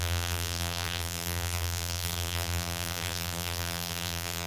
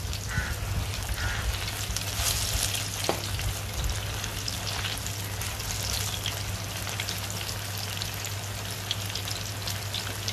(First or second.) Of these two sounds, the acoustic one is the second